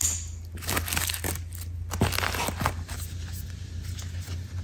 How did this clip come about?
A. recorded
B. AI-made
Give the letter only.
A